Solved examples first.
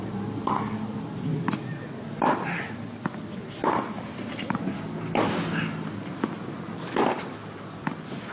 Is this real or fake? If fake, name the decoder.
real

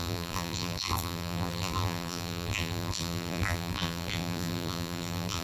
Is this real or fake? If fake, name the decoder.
fake, vocoder, BigVGAN v2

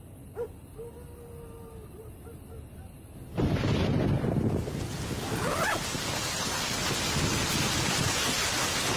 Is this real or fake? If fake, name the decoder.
real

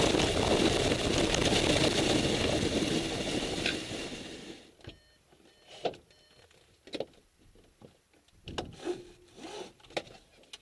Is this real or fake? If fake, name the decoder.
real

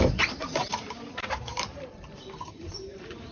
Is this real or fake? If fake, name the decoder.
fake, vocoder, BigVGAN v2